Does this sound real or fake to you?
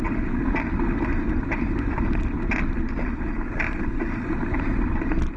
real